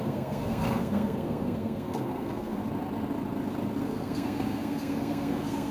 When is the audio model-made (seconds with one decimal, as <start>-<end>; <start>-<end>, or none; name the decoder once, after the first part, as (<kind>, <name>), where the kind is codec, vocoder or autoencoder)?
0.0-2.6 (codec, SNAC); 3.8-5.7